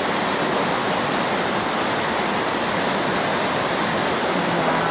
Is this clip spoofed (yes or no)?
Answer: no